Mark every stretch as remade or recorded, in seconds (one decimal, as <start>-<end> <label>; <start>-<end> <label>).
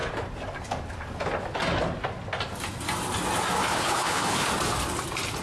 0.0-3.6 recorded; 3.6-4.5 remade; 4.5-5.4 recorded